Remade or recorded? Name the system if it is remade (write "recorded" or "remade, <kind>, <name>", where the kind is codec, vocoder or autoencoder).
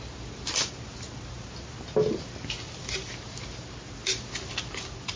recorded